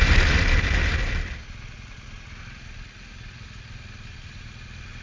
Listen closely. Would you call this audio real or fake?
real